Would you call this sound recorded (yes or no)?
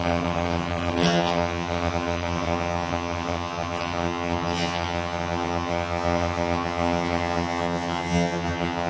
no